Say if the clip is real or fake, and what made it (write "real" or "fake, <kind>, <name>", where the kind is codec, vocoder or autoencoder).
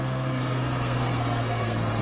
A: fake, codec, SNAC